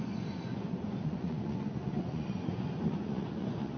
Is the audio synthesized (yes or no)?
yes